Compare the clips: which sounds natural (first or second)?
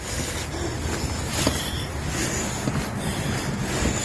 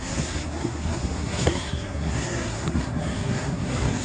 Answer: first